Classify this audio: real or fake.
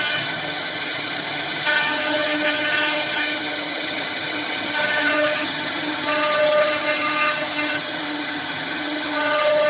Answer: fake